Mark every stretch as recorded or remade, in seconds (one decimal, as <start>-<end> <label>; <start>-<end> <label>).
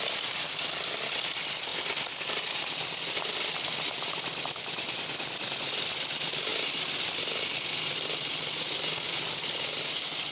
0.0-10.3 recorded